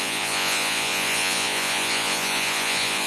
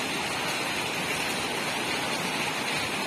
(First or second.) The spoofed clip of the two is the first